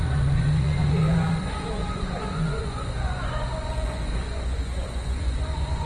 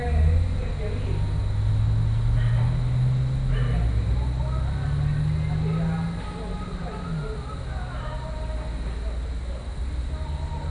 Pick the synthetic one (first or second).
first